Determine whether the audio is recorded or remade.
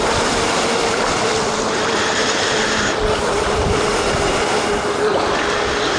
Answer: remade